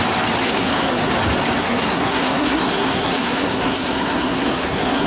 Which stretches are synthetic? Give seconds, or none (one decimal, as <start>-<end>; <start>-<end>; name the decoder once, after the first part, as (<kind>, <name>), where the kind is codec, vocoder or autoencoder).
0.4-1.1 (codec, SNAC); 1.6-5.1